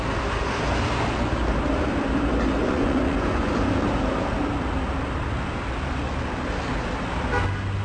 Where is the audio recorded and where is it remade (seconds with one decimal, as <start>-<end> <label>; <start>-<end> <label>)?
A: 0.0-2.6 recorded; 2.6-3.5 remade; 3.5-7.8 recorded

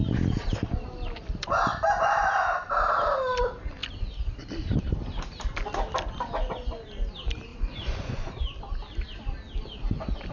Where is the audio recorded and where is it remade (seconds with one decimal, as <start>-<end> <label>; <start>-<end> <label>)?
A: 0.0-7.5 recorded; 7.5-8.3 remade; 8.3-10.3 recorded

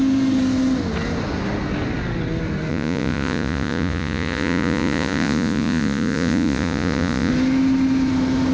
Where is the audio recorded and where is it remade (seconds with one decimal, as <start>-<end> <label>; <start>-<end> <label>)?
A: 0.0-2.7 recorded; 2.7-7.3 remade; 7.3-8.5 recorded

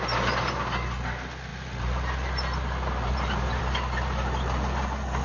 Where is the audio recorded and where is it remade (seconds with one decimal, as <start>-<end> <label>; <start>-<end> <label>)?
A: 0.0-5.2 recorded

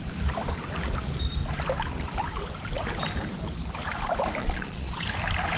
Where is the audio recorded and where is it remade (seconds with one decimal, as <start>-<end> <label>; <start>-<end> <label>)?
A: 0.0-4.4 recorded; 4.4-5.0 remade; 5.0-5.6 recorded

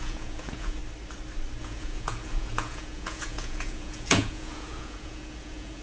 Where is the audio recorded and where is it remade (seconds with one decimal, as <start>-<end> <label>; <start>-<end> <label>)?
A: 0.0-0.8 remade; 0.8-1.6 recorded; 1.6-5.8 remade

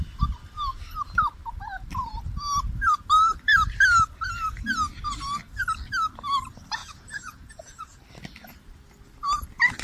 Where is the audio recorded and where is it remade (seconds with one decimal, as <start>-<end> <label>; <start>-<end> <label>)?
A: 0.0-6.8 recorded; 6.8-8.0 remade; 8.0-9.8 recorded